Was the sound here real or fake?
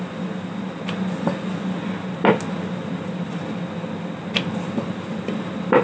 real